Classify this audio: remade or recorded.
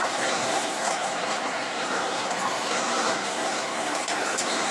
remade